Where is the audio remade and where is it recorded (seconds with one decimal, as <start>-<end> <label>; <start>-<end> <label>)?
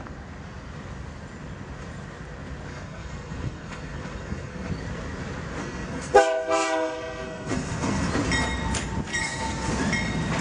0.0-2.7 recorded; 2.7-4.7 remade; 4.7-5.6 recorded; 5.6-8.1 remade; 8.1-9.1 recorded; 9.1-9.7 remade; 9.7-10.4 recorded